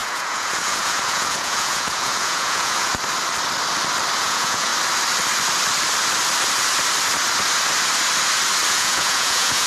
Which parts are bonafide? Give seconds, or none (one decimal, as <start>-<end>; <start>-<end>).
2.9-4.2; 4.7-8.7